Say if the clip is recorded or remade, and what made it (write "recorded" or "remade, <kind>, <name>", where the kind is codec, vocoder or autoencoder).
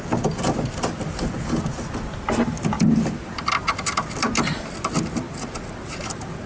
recorded